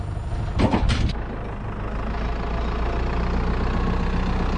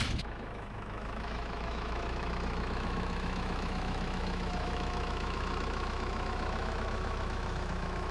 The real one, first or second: first